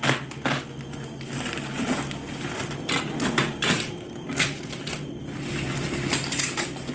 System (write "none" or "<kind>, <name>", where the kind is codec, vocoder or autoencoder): none